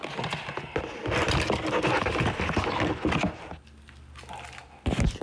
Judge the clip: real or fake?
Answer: real